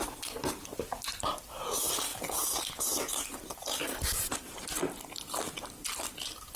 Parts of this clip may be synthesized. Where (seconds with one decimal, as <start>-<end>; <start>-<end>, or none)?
0.0-6.6

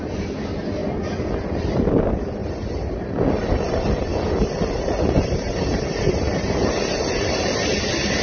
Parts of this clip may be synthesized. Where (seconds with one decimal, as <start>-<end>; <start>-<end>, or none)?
2.4-6.7

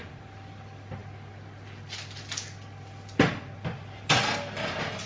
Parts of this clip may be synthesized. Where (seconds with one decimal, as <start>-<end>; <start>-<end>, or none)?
none

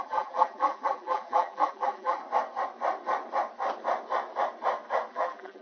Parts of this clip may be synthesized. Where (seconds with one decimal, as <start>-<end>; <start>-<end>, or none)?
0.0-2.2; 5.1-5.6

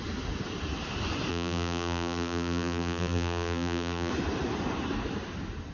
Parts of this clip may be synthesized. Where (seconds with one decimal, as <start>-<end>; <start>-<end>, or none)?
1.3-4.1

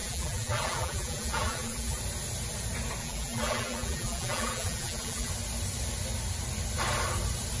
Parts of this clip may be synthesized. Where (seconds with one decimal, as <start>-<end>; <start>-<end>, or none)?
0.0-2.0; 3.0-5.3